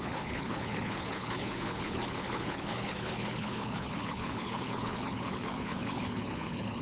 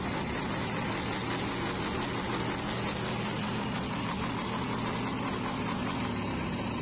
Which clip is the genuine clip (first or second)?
second